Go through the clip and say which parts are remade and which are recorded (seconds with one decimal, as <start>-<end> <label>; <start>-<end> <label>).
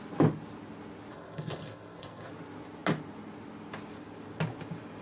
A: 0.0-1.1 recorded; 1.1-2.3 remade; 2.3-5.0 recorded